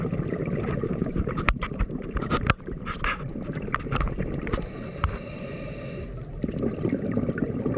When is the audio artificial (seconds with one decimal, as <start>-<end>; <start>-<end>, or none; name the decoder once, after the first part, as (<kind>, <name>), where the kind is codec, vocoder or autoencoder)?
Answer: 1.0-2.3 (vocoder, BigVGAN v2)

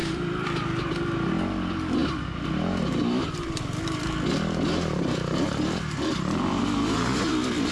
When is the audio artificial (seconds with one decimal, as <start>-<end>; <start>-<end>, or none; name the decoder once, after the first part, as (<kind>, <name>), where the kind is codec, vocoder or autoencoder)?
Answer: 0.0-0.9 (vocoder, BigVGAN v2); 2.0-6.6

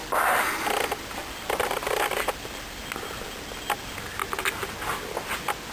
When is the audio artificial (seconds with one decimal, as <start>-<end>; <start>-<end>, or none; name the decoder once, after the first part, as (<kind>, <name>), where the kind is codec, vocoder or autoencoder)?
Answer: 0.0-3.4 (vocoder, BigVGAN v2)

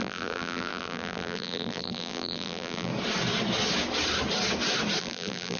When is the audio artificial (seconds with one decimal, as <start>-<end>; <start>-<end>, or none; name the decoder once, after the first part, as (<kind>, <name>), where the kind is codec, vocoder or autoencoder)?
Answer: 0.0-2.9 (vocoder, BigVGAN v2); 5.0-5.6